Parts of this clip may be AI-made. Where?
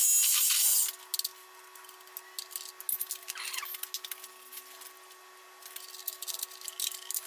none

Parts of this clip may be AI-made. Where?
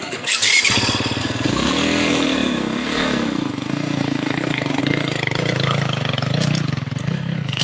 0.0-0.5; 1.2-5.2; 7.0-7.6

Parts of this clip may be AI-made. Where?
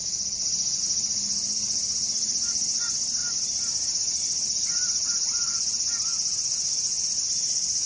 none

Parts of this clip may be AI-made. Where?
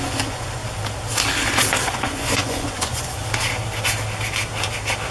0.0-0.6; 1.8-3.2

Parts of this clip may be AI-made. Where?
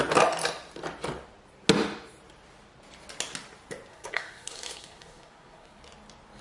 3.9-5.8